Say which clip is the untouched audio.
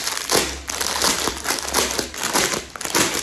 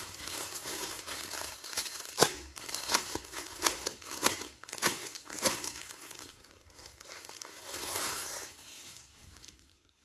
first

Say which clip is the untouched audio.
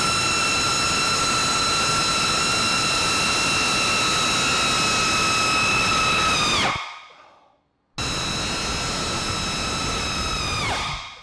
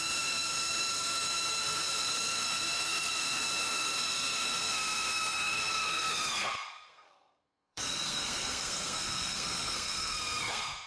first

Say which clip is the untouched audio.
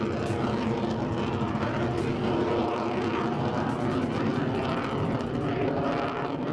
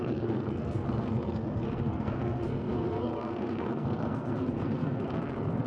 first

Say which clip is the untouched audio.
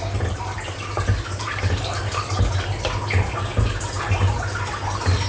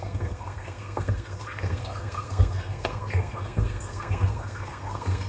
first